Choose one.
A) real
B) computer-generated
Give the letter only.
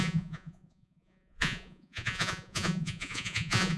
B